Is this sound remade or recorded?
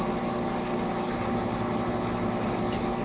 recorded